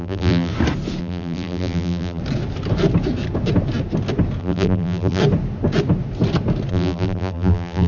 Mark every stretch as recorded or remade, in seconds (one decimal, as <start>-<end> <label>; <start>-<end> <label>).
0.0-0.5 remade; 0.5-1.0 recorded; 1.0-2.2 remade; 2.2-4.4 recorded; 4.4-5.2 remade; 5.2-6.7 recorded; 6.7-7.9 remade